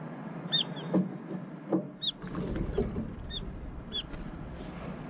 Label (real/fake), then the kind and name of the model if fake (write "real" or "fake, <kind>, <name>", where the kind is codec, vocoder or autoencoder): real